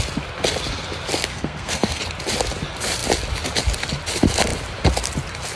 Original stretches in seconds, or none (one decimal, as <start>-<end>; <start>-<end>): 0.0-1.3; 2.0-5.6